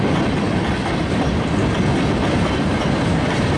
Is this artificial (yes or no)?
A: no